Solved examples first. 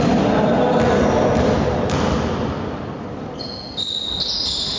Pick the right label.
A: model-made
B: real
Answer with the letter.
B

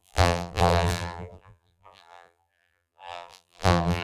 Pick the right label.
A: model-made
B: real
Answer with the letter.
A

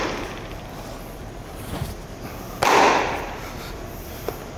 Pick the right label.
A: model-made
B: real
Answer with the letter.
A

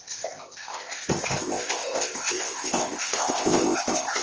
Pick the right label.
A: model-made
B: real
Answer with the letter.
A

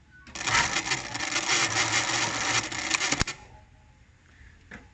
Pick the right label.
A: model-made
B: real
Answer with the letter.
B